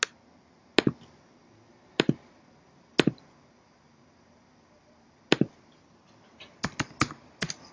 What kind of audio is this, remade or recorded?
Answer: recorded